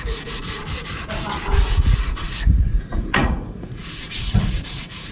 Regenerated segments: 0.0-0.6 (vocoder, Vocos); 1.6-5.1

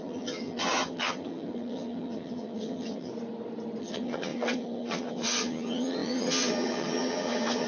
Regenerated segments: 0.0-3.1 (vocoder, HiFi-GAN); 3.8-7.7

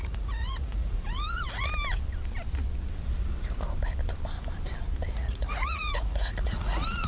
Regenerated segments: 0.0-1.7 (vocoder, Vocos); 5.1-7.1

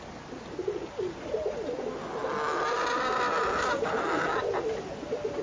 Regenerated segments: none

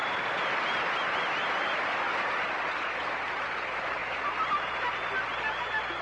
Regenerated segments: none